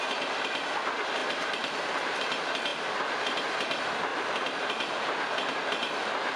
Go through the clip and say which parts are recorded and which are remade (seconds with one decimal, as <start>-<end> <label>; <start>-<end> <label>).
0.0-1.2 recorded; 1.2-2.2 remade; 2.2-4.1 recorded; 4.1-4.9 remade; 4.9-6.4 recorded